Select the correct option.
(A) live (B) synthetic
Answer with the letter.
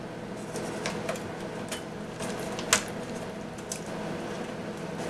A